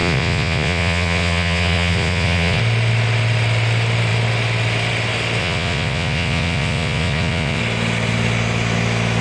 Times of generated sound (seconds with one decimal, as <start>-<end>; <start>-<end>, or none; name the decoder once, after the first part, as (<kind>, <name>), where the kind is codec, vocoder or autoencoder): 0.0-2.6 (vocoder, Vocos); 5.4-7.6